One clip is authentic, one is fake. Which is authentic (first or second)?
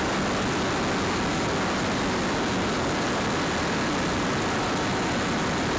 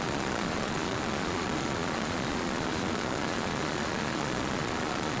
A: first